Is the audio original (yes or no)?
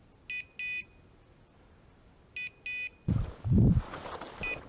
yes